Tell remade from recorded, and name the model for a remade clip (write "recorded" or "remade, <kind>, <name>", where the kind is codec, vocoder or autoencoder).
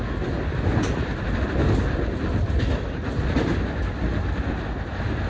recorded